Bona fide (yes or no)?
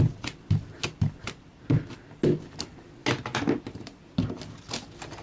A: yes